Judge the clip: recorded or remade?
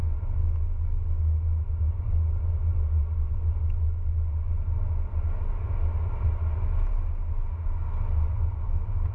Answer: recorded